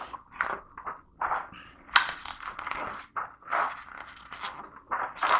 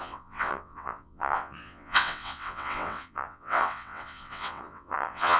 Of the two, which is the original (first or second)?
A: first